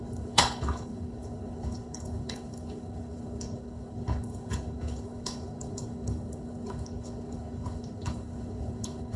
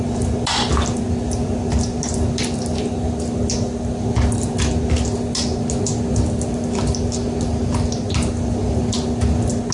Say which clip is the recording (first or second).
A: second